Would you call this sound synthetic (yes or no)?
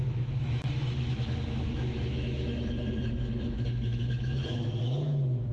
yes